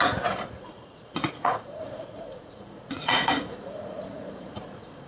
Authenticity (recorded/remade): remade